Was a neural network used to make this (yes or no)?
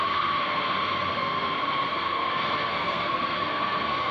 yes